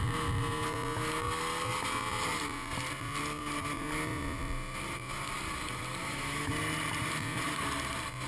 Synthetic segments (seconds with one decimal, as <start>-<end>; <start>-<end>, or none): 6.0-6.5